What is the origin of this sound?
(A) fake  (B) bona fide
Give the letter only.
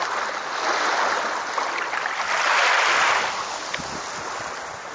B